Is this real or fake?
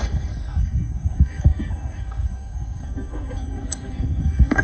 fake